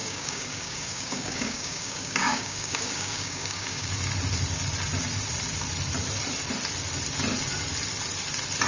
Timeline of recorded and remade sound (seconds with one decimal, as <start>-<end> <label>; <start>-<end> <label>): 0.0-3.9 remade; 3.9-8.7 recorded